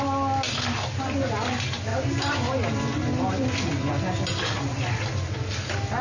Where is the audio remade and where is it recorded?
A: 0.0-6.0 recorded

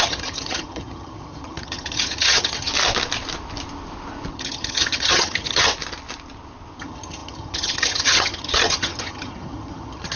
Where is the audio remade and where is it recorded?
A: 0.0-2.7 remade; 2.7-4.3 recorded; 4.3-5.7 remade; 5.7-6.8 recorded; 6.8-10.2 remade

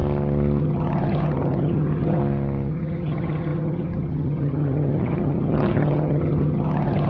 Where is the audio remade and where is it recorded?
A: 0.0-0.6 recorded; 0.6-2.2 remade; 2.2-2.7 recorded; 2.7-7.1 remade

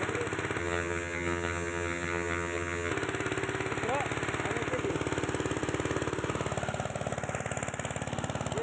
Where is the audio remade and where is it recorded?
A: 0.0-0.6 recorded; 0.6-2.9 remade; 2.9-8.6 recorded